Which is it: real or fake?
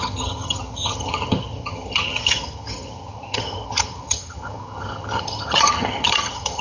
fake